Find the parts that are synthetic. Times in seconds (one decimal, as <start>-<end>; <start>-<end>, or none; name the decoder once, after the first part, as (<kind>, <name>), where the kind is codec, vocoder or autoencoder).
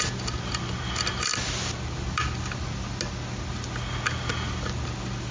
none